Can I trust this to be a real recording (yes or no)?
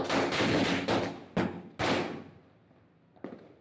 yes